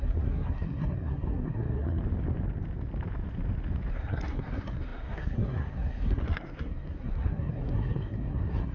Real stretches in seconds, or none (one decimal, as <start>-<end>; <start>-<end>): 2.0-3.9